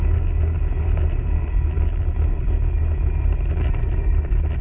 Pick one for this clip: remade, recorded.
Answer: recorded